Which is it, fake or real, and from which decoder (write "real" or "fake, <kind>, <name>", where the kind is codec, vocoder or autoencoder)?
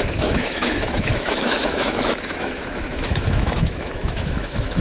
fake, autoencoder, DAC-VAE